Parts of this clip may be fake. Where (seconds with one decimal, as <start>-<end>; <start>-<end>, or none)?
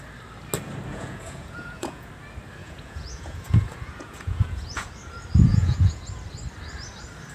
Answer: 0.9-2.1; 2.6-4.9; 5.5-6.0